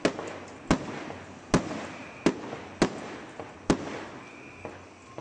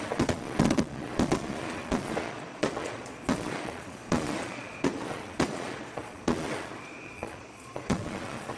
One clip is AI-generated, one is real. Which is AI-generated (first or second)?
second